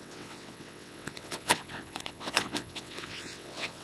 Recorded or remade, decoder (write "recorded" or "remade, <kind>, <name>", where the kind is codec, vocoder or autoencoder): remade, vocoder, WaveNeXt